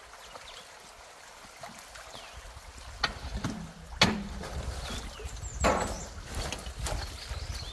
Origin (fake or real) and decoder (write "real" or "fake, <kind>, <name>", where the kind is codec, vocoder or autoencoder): real